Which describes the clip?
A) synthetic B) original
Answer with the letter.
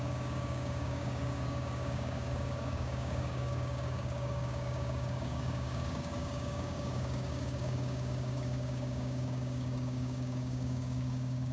A